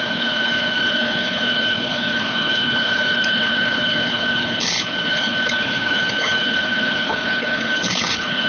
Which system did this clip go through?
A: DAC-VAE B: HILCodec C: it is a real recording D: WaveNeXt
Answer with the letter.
B